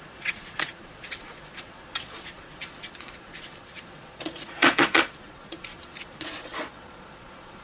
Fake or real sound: fake